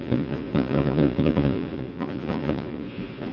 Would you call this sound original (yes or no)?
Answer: no